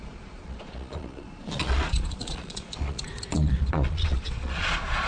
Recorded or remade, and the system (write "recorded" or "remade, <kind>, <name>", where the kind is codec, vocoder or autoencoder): remade, vocoder, Vocos